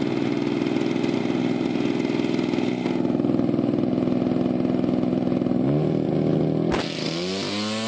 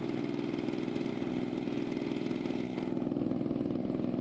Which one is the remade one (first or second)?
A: second